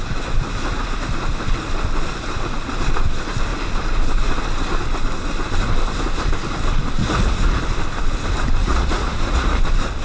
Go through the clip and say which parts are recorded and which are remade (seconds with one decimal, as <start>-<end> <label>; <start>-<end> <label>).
0.0-7.0 recorded; 7.0-7.6 remade; 7.6-8.6 recorded; 8.6-9.6 remade; 9.6-10.0 recorded

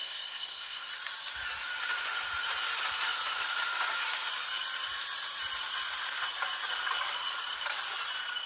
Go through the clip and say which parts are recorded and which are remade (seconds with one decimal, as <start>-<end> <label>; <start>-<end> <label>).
0.0-0.9 remade; 0.9-8.5 recorded

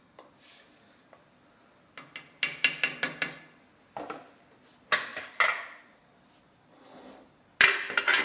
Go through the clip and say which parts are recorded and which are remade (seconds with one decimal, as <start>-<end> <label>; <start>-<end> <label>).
0.0-8.2 recorded